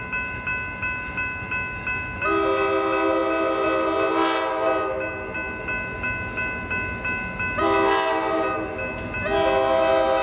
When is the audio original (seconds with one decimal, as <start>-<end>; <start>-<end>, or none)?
0.0-10.2